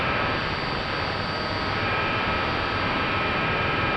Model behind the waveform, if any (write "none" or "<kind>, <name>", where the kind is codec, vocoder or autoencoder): vocoder, BigVGAN v2